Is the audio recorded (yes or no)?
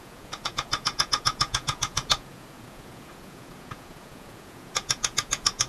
no